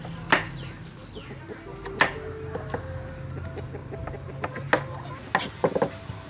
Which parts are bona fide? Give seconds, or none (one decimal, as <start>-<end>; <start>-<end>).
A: 0.0-6.3